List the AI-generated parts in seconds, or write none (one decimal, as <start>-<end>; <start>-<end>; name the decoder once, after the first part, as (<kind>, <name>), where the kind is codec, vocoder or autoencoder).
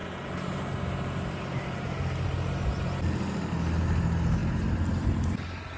none